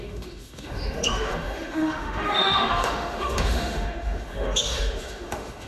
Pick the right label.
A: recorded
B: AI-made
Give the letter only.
B